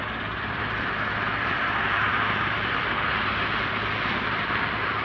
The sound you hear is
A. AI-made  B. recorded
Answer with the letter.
A